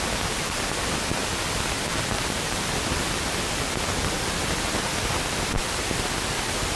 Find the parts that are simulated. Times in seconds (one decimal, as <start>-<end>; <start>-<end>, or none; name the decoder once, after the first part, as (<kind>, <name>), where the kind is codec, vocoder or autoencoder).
0.0-1.2 (vocoder, BigVGAN v2); 2.0-3.0; 3.5-6.8